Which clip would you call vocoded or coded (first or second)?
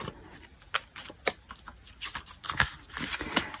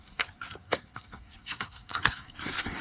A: second